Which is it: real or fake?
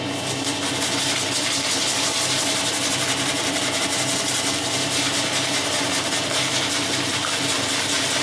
real